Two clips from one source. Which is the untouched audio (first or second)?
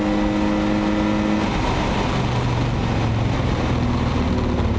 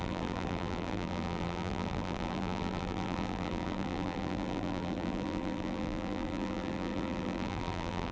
first